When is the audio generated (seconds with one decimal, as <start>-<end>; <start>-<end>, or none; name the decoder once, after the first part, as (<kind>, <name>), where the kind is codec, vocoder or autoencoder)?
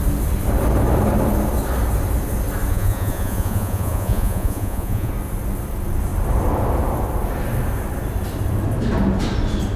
2.7-5.1 (vocoder, Vocos)